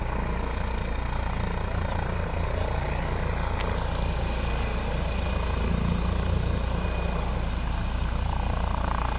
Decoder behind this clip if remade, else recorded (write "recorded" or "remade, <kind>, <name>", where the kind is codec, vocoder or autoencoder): recorded